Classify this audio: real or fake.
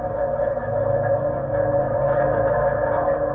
real